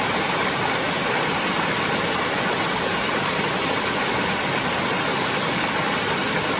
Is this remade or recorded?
recorded